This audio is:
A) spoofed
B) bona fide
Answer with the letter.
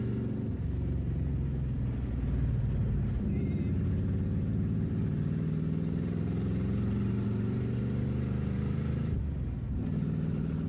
A